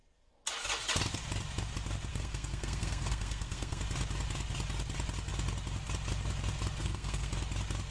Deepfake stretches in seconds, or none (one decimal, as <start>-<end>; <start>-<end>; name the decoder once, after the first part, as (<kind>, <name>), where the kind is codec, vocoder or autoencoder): 2.1-3.8 (codec, SNAC); 6.8-7.3